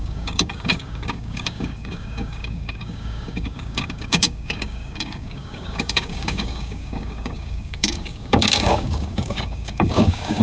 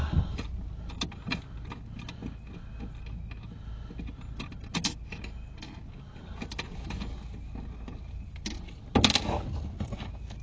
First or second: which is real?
second